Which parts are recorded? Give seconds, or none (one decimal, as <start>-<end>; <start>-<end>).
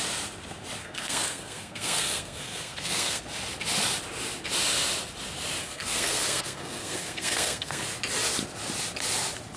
0.0-0.8; 3.2-5.6; 7.8-9.6